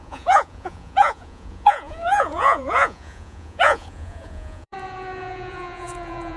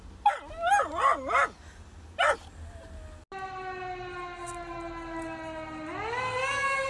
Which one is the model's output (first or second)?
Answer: first